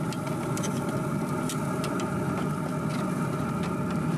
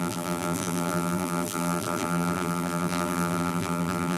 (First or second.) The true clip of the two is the first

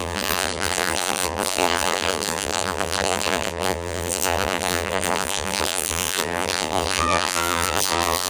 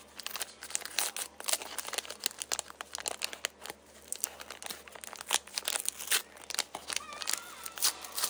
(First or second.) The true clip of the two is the second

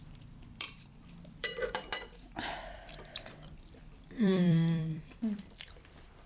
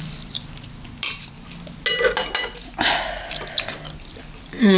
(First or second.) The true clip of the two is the second